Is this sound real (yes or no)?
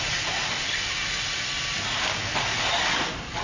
yes